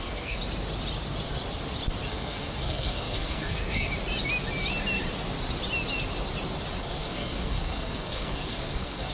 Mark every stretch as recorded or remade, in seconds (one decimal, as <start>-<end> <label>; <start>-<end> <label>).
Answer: 0.0-0.4 remade; 0.4-2.1 recorded; 2.1-3.9 remade; 3.9-6.8 recorded; 6.8-9.1 remade